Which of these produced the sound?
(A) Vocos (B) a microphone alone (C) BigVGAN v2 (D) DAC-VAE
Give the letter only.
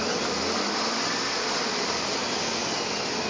B